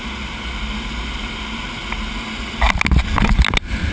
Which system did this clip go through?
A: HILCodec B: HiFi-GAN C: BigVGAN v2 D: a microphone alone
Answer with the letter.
D